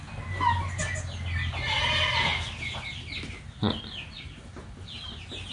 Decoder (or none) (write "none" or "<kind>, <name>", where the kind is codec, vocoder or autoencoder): none